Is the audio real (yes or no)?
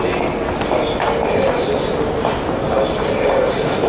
yes